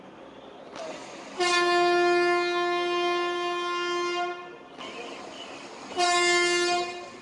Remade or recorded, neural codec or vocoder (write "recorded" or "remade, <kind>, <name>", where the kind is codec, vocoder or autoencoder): recorded